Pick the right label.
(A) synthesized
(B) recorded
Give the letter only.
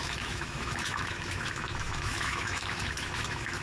A